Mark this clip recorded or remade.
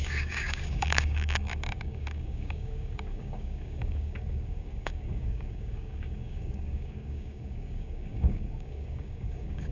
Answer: remade